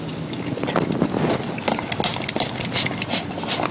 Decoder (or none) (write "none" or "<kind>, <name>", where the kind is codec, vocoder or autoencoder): none